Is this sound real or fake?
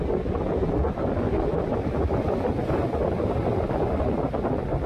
real